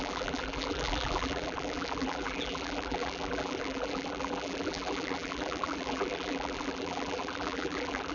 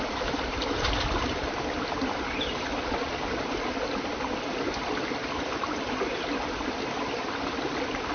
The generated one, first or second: first